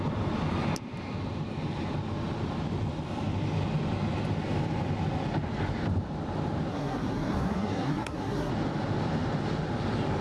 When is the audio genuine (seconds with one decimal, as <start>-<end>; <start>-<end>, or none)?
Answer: 0.0-6.7; 8.5-10.2